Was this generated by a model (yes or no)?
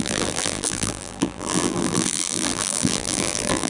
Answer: yes